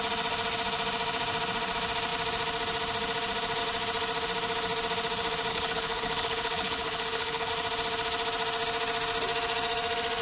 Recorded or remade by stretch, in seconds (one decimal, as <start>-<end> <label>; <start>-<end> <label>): 0.0-5.5 recorded; 5.5-7.5 remade; 7.5-10.2 recorded